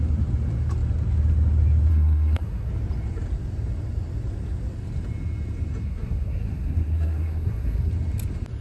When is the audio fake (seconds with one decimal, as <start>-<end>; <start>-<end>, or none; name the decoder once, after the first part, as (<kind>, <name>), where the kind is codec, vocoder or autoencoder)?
1.9-2.7 (codec, SNAC); 5.8-7.9